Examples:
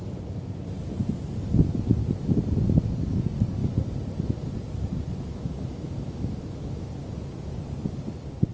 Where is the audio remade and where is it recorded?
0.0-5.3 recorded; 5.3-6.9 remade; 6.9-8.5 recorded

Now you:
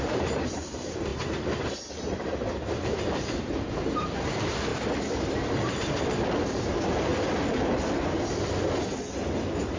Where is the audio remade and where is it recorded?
0.0-1.1 remade; 1.1-1.9 recorded; 1.9-4.7 remade; 4.7-5.5 recorded; 5.5-7.1 remade; 7.1-9.8 recorded

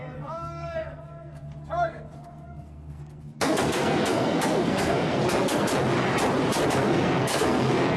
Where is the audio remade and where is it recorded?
0.0-5.7 remade; 5.7-6.7 recorded; 6.7-8.0 remade

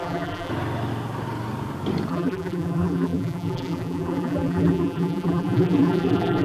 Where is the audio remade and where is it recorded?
0.0-0.5 remade; 0.5-2.1 recorded; 2.1-6.4 remade

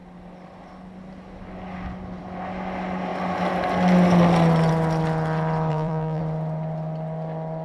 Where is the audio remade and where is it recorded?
0.0-5.7 recorded; 5.7-6.2 remade; 6.2-7.6 recorded

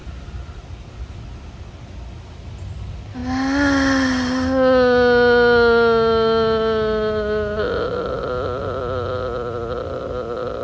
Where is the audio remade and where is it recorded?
0.0-10.6 recorded

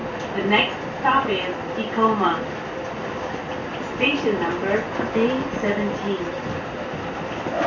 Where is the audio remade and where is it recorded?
0.0-7.7 recorded